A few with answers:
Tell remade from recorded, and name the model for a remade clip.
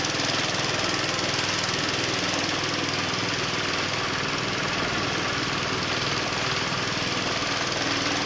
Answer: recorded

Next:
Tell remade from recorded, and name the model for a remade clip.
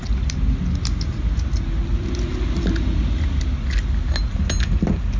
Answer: recorded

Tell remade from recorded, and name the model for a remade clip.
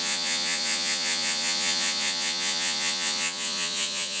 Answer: remade, vocoder, Vocos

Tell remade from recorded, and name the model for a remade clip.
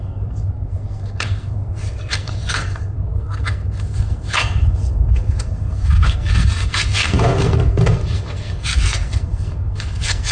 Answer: remade, codec, SNAC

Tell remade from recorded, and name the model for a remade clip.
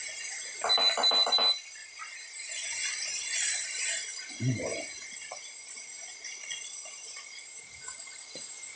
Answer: recorded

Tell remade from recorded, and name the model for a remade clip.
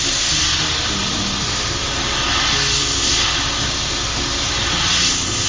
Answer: recorded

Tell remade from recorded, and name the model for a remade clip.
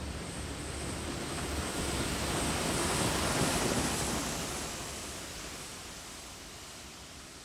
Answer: remade, vocoder, BigVGAN v2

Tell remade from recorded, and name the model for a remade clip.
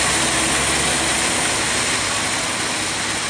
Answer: recorded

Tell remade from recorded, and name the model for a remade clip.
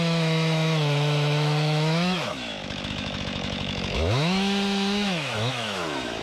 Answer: remade, autoencoder, DAC-VAE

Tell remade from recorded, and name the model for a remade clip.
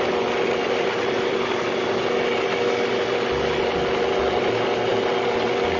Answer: recorded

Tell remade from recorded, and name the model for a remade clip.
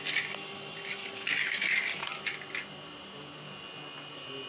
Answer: recorded